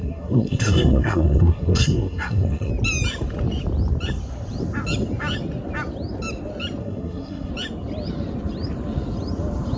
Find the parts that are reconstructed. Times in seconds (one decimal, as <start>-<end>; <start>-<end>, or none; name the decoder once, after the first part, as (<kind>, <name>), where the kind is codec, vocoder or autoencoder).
0.0-2.7 (codec, SNAC); 6.8-7.5